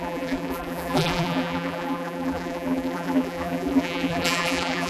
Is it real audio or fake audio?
fake